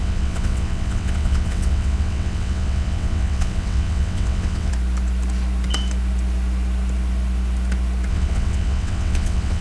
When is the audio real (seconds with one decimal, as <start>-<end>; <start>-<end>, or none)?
4.7-8.1